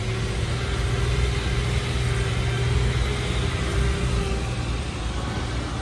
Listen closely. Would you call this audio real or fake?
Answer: real